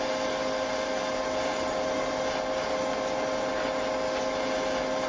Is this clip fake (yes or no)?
no